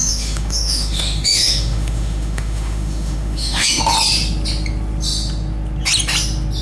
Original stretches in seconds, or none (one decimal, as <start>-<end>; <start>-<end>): 3.8-6.6